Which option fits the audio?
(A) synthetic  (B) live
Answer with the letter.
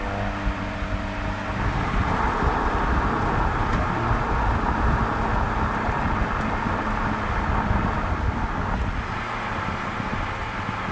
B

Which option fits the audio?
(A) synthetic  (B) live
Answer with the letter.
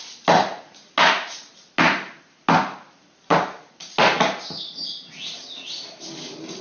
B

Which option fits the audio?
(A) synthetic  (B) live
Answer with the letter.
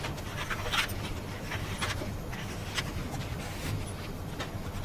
B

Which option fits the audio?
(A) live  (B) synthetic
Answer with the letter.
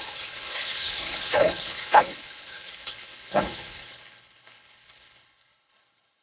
B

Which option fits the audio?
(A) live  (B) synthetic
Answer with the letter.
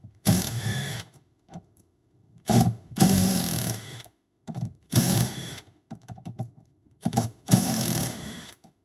B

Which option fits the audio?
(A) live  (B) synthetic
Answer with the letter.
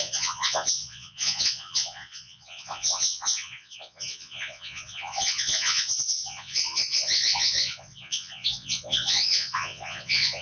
B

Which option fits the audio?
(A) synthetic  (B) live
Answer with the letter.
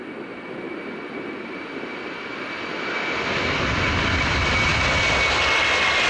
B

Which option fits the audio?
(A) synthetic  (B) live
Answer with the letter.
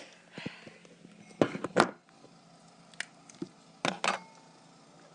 B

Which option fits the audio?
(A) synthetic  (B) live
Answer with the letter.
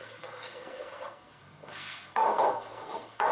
A